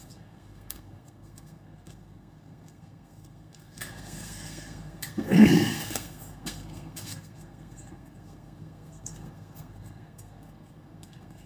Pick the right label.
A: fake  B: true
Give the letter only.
A